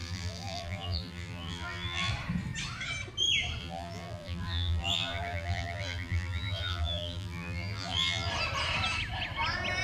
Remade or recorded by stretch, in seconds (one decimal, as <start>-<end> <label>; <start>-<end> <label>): 0.0-2.1 remade; 2.1-3.6 recorded; 3.6-8.3 remade; 8.3-9.8 recorded